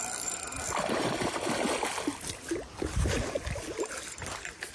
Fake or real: real